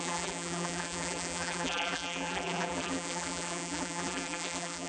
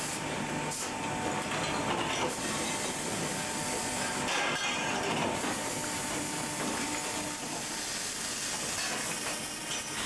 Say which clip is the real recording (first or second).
second